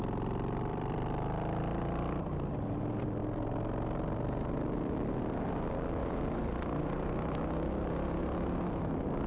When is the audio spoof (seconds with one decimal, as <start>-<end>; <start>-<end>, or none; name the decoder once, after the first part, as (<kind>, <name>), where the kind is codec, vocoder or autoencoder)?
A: 0.7-1.6 (vocoder, BigVGAN v2); 3.2-5.1; 6.0-6.8